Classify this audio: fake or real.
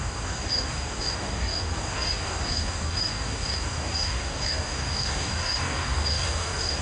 fake